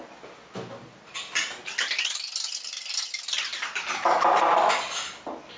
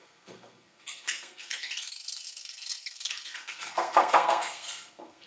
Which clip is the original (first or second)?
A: first